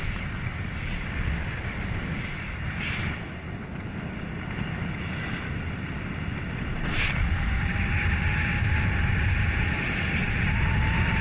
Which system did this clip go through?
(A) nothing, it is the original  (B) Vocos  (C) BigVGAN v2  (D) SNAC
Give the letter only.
A